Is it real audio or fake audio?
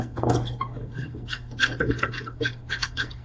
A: fake